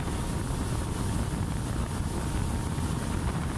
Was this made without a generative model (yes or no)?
yes